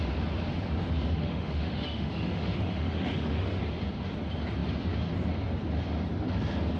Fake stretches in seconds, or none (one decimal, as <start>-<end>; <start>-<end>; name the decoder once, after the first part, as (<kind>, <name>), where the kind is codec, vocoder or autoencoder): 1.2-3.6 (autoencoder, DAC-VAE)